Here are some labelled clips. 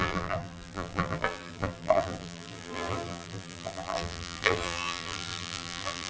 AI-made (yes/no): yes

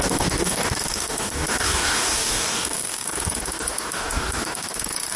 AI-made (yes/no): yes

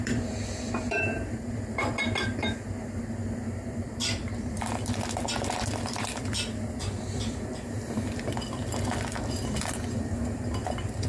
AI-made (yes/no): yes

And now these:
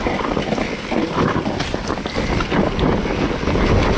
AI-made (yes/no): no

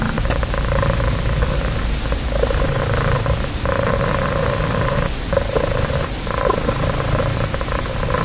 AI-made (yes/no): no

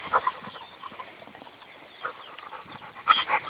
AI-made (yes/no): yes